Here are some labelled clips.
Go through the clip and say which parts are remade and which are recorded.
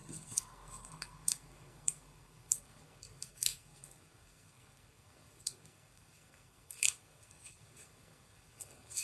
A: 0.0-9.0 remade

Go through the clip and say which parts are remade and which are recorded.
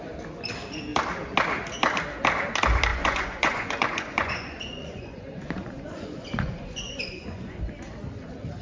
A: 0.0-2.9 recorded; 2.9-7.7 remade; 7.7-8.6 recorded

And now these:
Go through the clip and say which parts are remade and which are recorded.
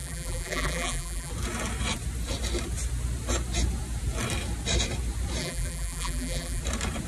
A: 0.0-1.3 remade; 1.3-5.4 recorded; 5.4-6.6 remade; 6.6-7.1 recorded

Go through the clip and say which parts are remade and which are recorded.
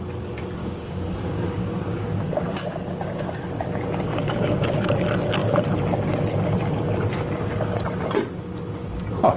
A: 0.0-0.6 recorded; 0.6-4.9 remade; 4.9-9.4 recorded